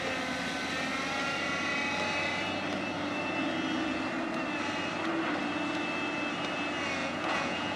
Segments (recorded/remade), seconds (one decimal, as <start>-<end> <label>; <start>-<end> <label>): 0.0-7.0 recorded; 7.0-7.8 remade